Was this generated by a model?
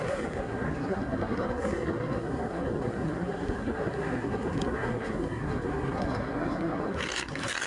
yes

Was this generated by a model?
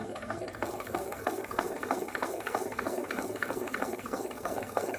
yes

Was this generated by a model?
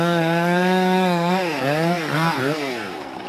yes